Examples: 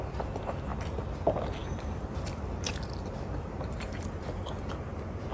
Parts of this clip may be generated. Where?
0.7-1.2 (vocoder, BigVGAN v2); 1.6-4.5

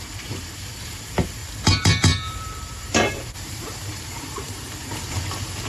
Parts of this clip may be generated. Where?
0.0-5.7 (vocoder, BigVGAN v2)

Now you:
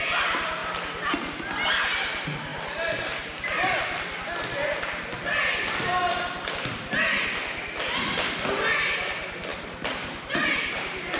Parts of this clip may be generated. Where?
0.6-1.3 (vocoder, BigVGAN v2); 9.5-11.2